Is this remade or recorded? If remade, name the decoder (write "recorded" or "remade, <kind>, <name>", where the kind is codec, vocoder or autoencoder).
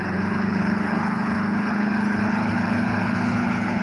remade, codec, HILCodec